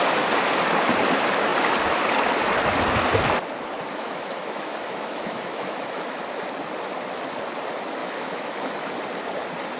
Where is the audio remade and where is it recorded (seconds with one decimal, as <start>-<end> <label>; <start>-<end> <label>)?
0.0-3.9 recorded; 3.9-6.2 remade; 6.2-8.0 recorded; 8.0-8.7 remade; 8.7-9.8 recorded